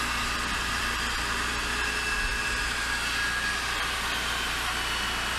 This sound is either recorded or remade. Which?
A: recorded